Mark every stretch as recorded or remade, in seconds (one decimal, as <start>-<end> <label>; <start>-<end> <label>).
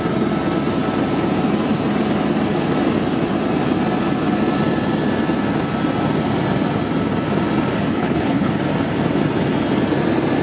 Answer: 0.0-7.9 recorded; 7.9-8.5 remade; 8.5-10.4 recorded